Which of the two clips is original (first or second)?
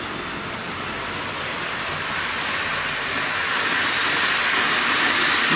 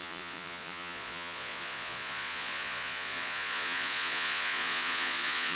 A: first